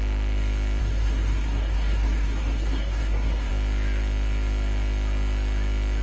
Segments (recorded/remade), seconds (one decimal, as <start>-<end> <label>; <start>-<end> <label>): 0.0-0.8 recorded; 0.8-3.5 remade; 3.5-6.0 recorded